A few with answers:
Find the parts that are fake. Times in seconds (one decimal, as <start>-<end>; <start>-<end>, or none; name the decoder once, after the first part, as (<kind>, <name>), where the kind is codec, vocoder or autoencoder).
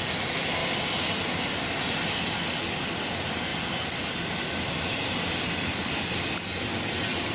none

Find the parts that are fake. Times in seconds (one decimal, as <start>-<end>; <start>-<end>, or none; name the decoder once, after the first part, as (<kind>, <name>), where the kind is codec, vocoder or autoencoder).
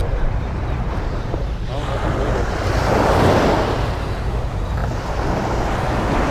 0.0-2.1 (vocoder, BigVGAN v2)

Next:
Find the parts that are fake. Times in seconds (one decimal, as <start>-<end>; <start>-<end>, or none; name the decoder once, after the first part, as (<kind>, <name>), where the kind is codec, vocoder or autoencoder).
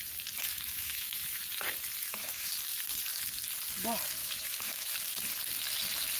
0.5-1.4 (autoencoder, DAC-VAE); 2.0-2.5; 4.2-4.9